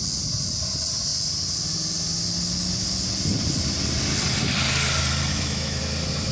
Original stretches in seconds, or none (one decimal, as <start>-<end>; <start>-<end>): 0.0-5.3; 5.8-6.3